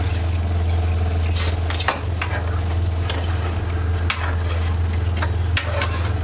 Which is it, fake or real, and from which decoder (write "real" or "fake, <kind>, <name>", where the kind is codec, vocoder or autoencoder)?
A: real